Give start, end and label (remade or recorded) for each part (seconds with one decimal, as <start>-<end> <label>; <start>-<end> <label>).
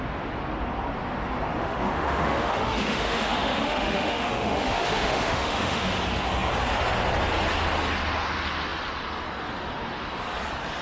0.0-1.6 recorded; 1.6-6.0 remade; 6.0-10.8 recorded